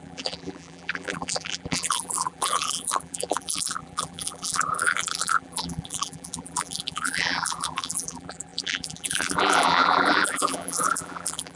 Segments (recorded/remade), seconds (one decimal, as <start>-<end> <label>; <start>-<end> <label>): 0.0-11.6 remade